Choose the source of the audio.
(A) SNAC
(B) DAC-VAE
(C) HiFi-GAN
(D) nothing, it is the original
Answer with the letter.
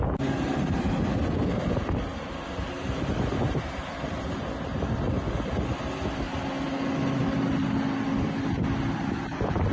D